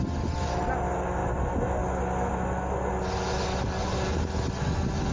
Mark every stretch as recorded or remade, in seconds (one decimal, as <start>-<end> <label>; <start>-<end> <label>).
0.0-5.1 recorded